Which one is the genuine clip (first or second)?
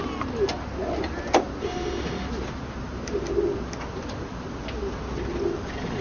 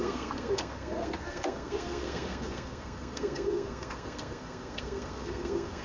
first